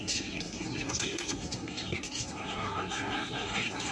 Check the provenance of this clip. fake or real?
fake